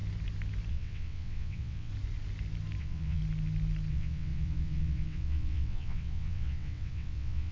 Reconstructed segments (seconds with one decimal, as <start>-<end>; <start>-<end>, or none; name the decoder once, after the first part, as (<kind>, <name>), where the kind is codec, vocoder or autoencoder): 0.7-1.9 (vocoder, WaveNeXt); 2.8-3.2; 3.9-7.5